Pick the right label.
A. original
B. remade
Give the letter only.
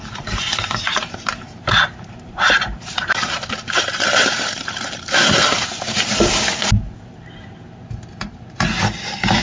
B